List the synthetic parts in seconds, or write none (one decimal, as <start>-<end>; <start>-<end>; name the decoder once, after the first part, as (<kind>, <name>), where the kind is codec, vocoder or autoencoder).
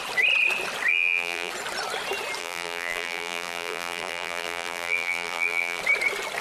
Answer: 0.9-1.5 (vocoder, BigVGAN v2); 2.4-5.8